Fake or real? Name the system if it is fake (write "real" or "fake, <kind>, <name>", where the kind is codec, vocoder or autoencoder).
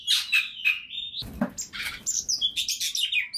real